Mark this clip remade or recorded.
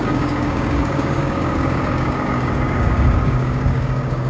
remade